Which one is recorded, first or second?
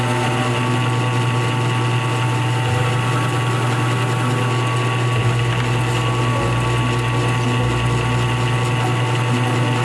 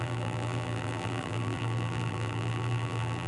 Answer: first